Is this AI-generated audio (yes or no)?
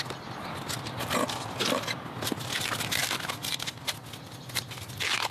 no